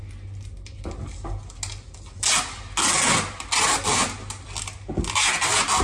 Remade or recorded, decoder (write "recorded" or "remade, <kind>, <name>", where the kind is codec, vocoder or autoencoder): recorded